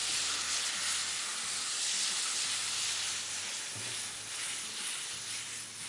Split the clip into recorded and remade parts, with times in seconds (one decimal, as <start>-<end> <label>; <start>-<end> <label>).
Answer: 0.0-5.9 recorded